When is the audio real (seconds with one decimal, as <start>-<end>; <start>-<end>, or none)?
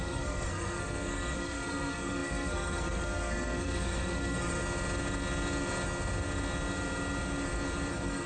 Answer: 4.6-7.9